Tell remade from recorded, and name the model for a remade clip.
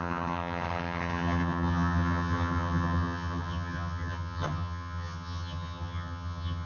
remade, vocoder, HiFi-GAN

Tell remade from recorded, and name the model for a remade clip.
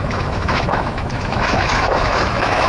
remade, autoencoder, DAC-VAE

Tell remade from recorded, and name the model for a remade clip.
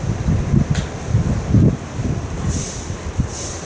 recorded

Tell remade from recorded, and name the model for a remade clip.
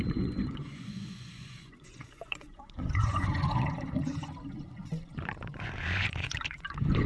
remade, vocoder, Vocos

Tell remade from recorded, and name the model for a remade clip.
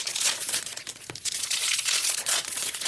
remade, vocoder, Vocos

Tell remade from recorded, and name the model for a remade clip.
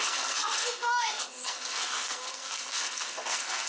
remade, codec, SNAC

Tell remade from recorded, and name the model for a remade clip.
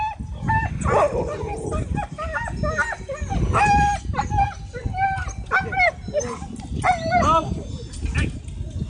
recorded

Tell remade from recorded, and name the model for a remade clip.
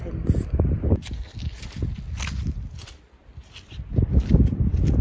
recorded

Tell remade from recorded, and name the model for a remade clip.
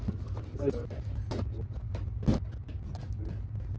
recorded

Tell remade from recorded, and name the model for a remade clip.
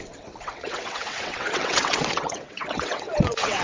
remade, vocoder, WaveNeXt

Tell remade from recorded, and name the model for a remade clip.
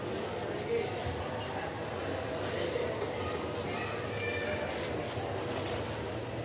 recorded